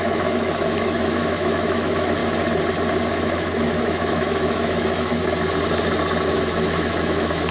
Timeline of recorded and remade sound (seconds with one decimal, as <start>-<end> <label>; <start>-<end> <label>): 0.0-2.2 remade; 2.2-3.1 recorded; 3.1-5.2 remade; 5.2-6.3 recorded; 6.3-7.5 remade